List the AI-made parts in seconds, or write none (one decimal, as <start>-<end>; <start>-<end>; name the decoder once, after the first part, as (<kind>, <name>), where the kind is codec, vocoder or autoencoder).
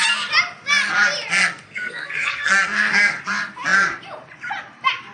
1.4-3.2 (codec, SNAC)